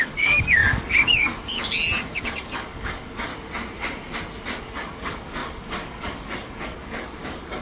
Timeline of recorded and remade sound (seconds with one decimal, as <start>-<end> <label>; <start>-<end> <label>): 0.0-1.5 remade; 1.5-2.1 recorded; 2.1-3.3 remade; 3.3-4.6 recorded; 4.6-7.6 remade